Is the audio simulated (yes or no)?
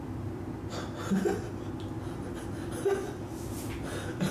no